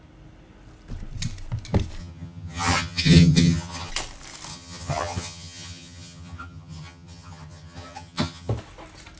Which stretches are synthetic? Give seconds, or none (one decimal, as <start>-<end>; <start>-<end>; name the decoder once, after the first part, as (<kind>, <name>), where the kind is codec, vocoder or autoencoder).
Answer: 2.0-3.9 (vocoder, HiFi-GAN); 4.5-8.5